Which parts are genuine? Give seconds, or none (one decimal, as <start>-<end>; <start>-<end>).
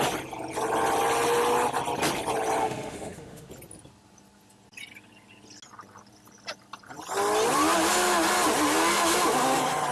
0.0-2.6; 3.5-9.9